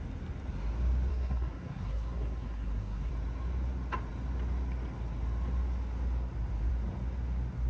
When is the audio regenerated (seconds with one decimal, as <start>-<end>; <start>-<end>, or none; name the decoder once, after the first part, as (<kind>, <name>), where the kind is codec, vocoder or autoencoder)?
1.1-3.1 (codec, SNAC)